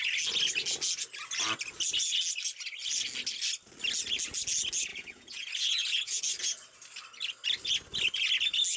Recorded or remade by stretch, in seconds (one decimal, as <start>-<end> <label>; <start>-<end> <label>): 0.0-4.9 recorded; 4.9-6.2 remade; 6.2-8.8 recorded